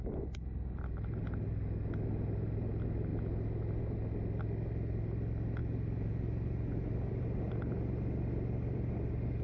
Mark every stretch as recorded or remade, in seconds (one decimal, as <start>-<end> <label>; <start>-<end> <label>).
0.0-5.6 recorded; 5.6-7.5 remade; 7.5-9.4 recorded